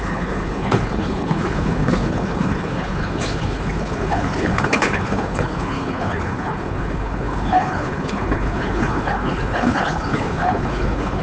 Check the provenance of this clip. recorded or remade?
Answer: remade